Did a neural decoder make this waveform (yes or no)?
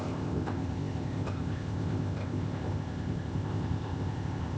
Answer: yes